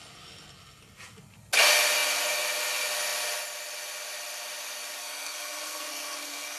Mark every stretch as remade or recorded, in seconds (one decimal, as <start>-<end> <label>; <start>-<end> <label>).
0.0-5.0 recorded; 5.0-6.6 remade